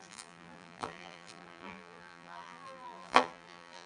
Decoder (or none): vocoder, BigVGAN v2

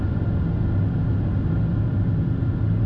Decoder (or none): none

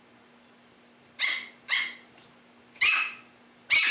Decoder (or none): none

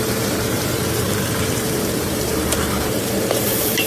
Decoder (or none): vocoder, BigVGAN v2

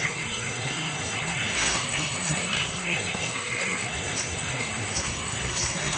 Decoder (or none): codec, SNAC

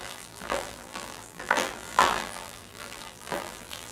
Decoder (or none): vocoder, BigVGAN v2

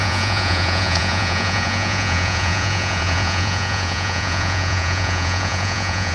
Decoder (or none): vocoder, Vocos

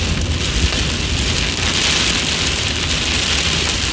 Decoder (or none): none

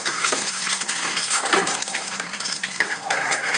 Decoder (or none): codec, SNAC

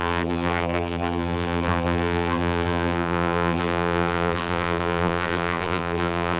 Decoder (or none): vocoder, BigVGAN v2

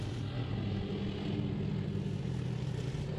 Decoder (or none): none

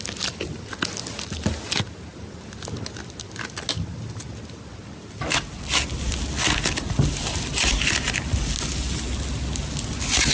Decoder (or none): none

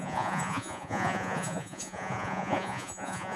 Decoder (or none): vocoder, Vocos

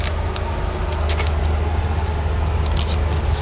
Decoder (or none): none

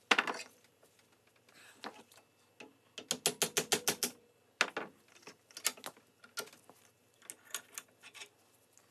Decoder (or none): none